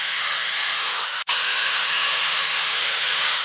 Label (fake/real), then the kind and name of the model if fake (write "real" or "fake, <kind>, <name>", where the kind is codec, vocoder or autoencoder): fake, autoencoder, DAC-VAE